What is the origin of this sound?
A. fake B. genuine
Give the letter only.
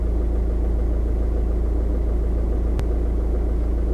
B